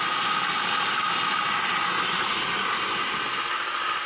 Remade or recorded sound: recorded